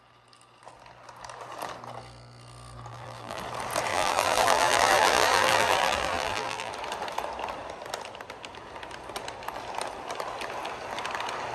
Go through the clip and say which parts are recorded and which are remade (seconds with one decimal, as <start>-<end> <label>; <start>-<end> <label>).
0.0-2.9 recorded; 2.9-3.4 remade; 3.4-3.9 recorded; 3.9-6.7 remade; 6.7-11.5 recorded